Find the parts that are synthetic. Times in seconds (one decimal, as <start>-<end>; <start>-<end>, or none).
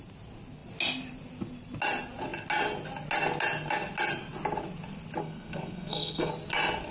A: 5.2-6.3